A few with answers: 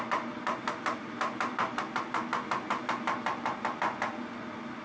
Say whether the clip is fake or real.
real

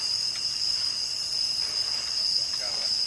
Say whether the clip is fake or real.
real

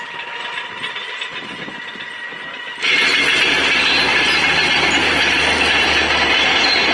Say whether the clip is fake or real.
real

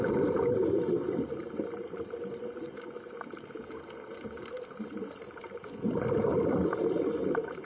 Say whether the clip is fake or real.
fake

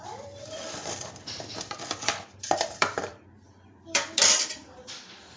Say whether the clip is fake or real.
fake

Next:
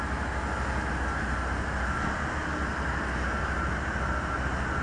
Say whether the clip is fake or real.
real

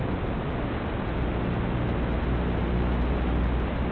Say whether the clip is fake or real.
real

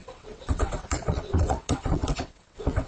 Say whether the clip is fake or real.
fake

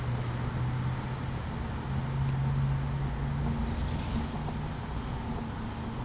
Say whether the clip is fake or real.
real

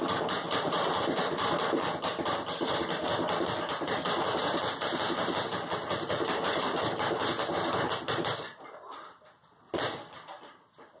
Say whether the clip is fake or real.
real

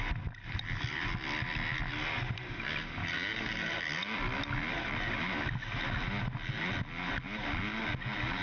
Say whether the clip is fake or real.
real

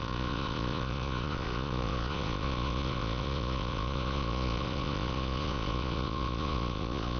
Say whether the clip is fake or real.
fake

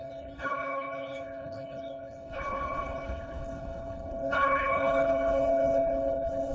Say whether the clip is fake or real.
fake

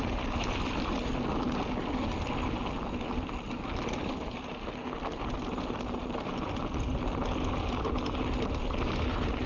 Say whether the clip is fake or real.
real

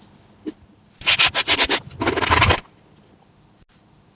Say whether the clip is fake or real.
real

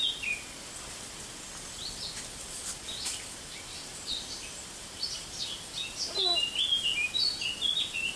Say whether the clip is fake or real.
real